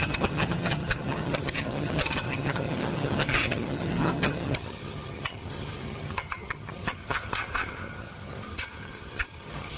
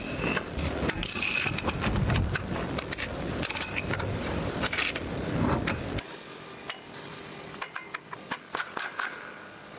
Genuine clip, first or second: second